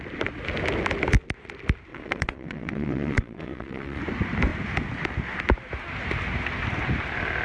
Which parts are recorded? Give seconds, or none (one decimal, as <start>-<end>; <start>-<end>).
0.0-1.9; 4.0-7.4